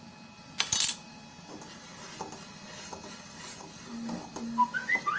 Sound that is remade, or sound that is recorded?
recorded